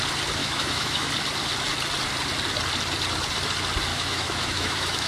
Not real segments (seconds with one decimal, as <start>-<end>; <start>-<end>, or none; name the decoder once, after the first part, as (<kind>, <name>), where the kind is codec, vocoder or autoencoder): 0.4-1.1 (autoencoder, DAC-VAE); 3.9-5.1